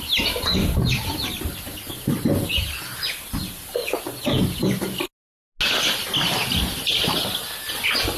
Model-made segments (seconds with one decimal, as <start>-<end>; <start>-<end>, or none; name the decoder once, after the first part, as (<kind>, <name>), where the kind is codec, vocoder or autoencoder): none